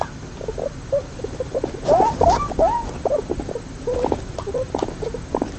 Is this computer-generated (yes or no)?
no